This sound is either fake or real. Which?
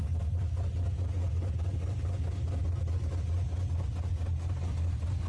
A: real